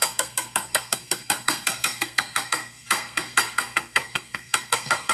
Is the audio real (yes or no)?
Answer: no